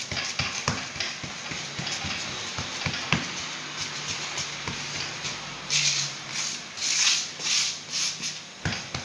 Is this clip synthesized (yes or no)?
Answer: no